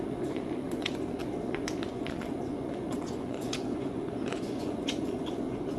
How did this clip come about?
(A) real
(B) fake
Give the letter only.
B